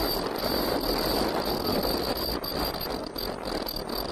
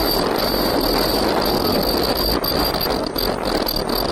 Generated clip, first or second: first